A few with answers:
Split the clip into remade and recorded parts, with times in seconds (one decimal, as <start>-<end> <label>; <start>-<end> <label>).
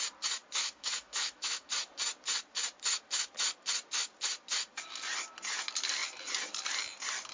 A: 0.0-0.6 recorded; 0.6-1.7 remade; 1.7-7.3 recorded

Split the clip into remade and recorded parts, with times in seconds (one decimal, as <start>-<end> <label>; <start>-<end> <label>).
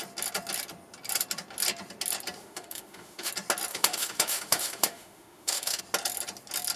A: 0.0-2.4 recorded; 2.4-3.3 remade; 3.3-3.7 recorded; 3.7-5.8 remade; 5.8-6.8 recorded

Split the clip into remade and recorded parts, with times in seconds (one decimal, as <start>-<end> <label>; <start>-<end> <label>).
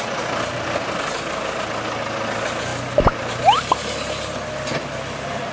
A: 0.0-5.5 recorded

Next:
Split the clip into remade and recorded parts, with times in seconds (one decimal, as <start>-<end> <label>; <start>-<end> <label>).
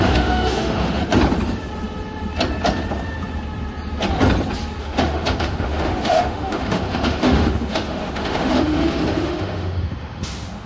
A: 0.0-1.0 remade; 1.0-4.8 recorded; 4.8-10.7 remade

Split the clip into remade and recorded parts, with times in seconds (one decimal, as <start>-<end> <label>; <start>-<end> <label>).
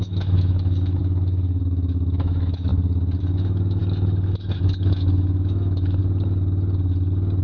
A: 0.0-2.7 remade; 2.7-3.2 recorded; 3.2-6.0 remade; 6.0-7.4 recorded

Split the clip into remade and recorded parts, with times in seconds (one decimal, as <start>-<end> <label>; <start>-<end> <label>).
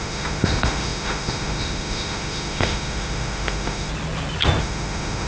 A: 0.0-3.9 remade; 3.9-4.6 recorded; 4.6-5.3 remade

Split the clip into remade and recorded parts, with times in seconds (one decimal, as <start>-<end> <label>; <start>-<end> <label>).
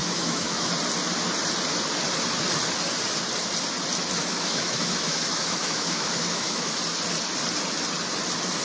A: 0.0-0.7 remade; 0.7-4.2 recorded; 4.2-6.8 remade; 6.8-8.6 recorded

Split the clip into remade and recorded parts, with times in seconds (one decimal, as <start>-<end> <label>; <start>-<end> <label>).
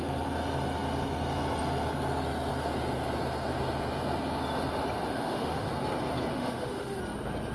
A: 0.0-5.1 recorded; 5.1-5.7 remade; 5.7-6.3 recorded; 6.3-7.0 remade; 7.0-7.5 recorded